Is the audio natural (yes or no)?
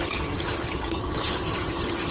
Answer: no